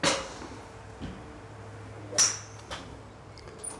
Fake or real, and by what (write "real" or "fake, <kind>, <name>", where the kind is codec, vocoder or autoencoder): real